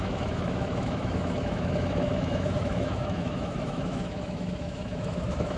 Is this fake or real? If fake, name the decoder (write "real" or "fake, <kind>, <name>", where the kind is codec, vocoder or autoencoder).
fake, autoencoder, DAC-VAE